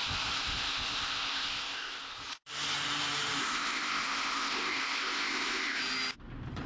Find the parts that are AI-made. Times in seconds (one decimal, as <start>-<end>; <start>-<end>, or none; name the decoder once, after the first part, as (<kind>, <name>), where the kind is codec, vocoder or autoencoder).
0.0-2.4 (codec, ZipCodec); 3.4-5.8